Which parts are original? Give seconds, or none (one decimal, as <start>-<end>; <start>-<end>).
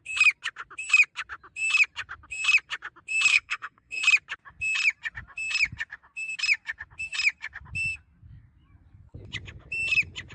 0.0-3.3; 4.0-10.3